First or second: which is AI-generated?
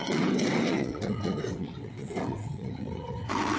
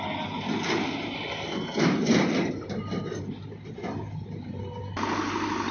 first